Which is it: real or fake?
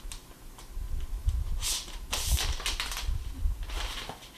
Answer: real